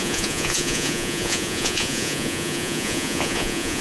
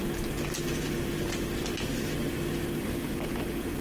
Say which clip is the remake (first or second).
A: first